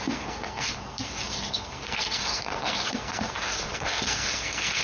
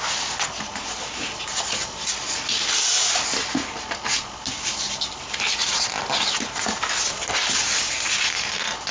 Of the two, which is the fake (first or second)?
first